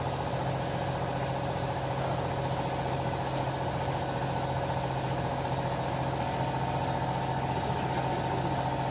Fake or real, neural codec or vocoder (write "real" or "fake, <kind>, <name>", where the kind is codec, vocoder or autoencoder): real